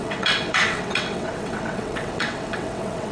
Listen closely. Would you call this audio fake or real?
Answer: fake